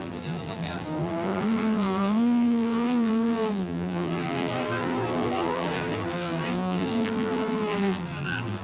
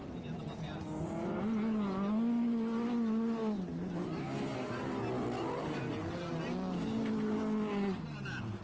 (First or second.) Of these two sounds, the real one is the second